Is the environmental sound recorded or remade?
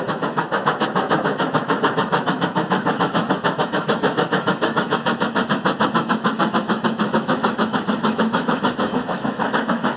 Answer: remade